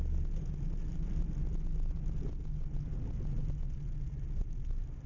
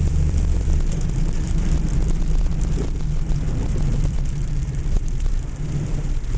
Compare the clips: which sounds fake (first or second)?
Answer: second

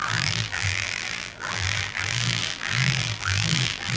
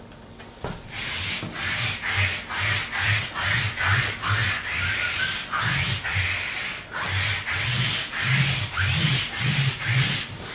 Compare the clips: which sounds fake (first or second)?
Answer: first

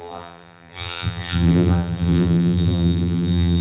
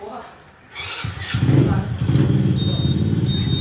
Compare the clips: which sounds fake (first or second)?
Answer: first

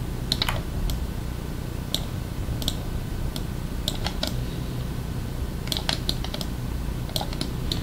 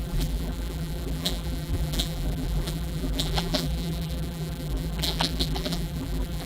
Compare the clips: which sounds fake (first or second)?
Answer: second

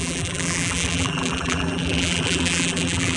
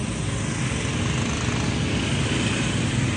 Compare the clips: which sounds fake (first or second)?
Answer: first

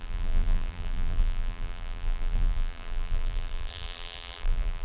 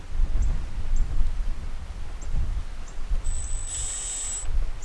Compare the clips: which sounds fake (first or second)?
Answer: first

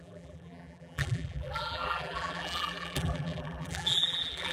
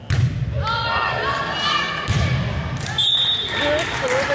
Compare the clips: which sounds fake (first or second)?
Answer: first